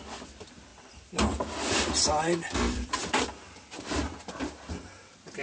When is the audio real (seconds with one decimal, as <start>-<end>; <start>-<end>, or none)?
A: 0.0-0.7; 2.9-5.4